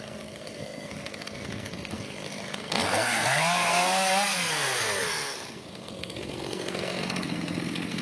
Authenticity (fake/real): fake